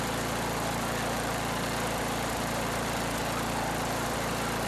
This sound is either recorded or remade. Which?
recorded